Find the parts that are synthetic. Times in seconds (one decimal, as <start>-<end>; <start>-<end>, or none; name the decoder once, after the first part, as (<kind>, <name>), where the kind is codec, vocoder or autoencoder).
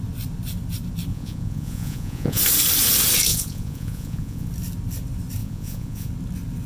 1.1-2.4 (vocoder, Vocos); 3.3-4.5; 5.4-6.1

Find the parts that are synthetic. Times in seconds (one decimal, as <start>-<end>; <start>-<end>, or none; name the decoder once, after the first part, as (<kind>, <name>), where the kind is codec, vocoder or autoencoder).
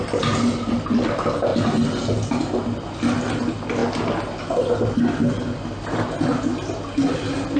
none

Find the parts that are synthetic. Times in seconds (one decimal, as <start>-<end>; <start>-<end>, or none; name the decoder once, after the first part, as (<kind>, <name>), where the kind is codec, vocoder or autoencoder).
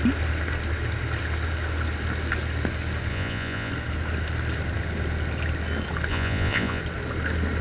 3.1-3.7 (vocoder, Vocos); 6.1-6.8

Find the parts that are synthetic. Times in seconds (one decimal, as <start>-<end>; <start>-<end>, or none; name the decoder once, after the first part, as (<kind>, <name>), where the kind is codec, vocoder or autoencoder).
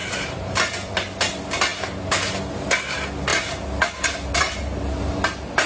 none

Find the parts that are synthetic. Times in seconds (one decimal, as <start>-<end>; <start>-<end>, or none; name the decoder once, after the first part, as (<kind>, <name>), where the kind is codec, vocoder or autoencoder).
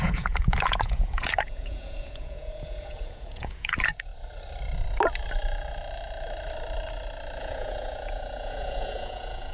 0.0-4.1 (vocoder, Vocos); 7.4-9.5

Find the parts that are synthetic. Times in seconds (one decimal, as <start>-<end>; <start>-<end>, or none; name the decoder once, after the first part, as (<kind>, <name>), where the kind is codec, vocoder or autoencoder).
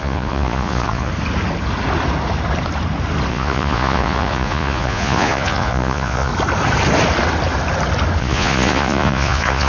0.0-1.1 (vocoder, Vocos); 3.3-6.3; 8.2-9.7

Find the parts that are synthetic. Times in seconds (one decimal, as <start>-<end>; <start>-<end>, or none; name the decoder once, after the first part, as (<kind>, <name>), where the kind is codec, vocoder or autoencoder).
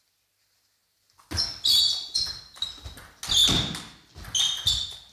none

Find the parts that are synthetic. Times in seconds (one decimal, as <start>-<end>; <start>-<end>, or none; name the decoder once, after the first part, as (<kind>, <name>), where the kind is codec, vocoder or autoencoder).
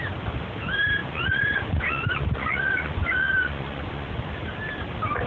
1.0-4.2 (vocoder, Vocos)